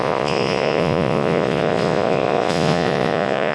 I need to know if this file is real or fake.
fake